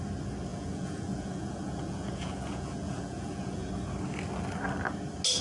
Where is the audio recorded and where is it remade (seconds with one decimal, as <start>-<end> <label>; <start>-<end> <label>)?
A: 0.0-0.5 recorded; 0.5-3.7 remade; 3.7-5.4 recorded